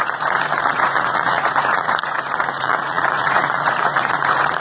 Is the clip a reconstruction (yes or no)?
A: yes